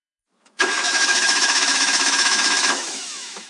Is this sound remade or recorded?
remade